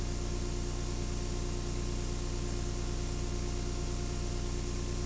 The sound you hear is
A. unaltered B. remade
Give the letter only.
A